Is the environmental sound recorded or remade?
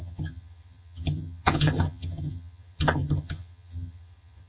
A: remade